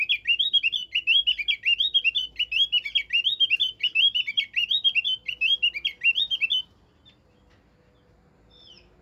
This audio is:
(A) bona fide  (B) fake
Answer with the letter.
A